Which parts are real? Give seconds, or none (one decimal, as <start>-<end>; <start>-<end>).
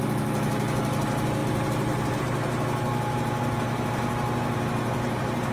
0.0-5.5